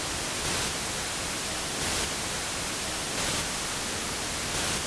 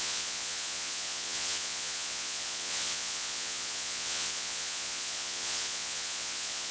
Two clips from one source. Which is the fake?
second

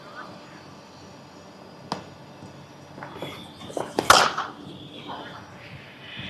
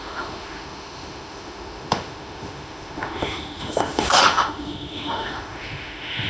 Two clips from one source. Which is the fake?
second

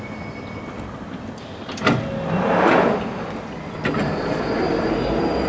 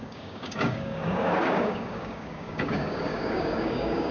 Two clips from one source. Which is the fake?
second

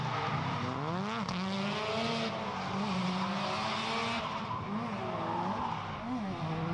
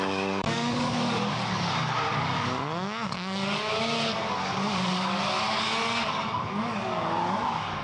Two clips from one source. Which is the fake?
second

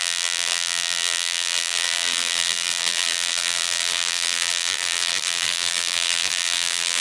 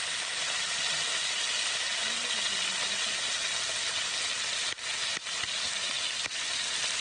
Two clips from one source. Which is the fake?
first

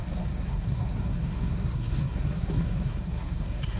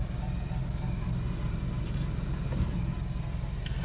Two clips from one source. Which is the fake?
first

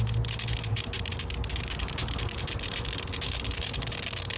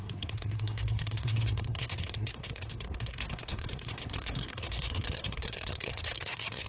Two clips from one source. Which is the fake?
second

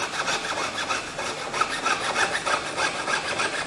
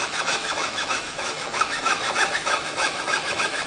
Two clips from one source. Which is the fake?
second